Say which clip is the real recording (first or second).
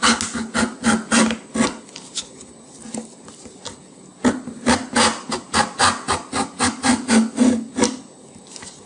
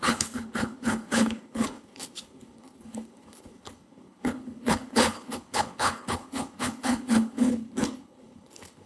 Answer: first